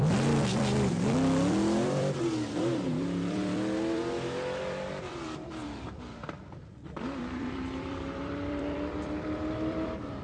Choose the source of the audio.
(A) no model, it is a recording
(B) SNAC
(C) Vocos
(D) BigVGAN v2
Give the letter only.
D